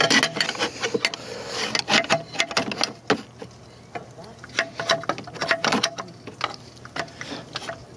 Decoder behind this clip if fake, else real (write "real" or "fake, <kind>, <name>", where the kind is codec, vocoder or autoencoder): real